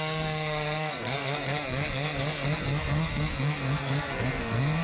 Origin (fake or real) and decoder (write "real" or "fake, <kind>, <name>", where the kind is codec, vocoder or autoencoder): fake, codec, SNAC